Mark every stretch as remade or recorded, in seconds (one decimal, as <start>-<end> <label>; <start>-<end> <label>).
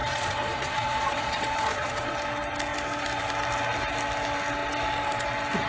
0.0-2.1 remade; 2.1-5.7 recorded